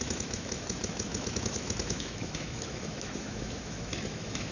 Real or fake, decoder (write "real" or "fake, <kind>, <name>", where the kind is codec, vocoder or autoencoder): fake, autoencoder, DAC-VAE